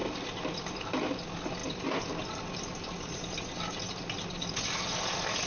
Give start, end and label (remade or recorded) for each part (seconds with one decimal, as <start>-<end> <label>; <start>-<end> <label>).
0.0-5.5 recorded